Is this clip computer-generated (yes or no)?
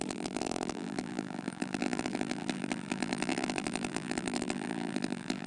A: yes